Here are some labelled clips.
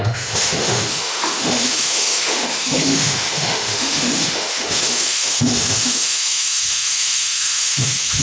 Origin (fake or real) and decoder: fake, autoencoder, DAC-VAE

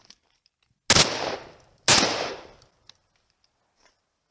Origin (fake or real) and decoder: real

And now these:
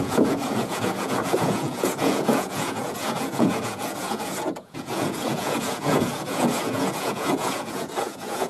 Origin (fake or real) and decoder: fake, vocoder, Vocos